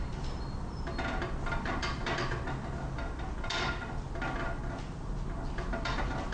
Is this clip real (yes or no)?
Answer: yes